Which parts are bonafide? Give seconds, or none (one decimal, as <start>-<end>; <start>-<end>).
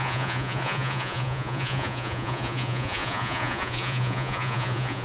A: none